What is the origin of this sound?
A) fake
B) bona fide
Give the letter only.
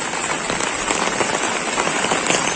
B